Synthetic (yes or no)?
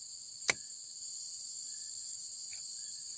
no